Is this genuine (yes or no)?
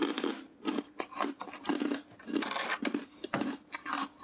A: yes